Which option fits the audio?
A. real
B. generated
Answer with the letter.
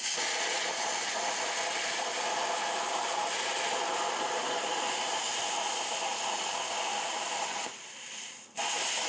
B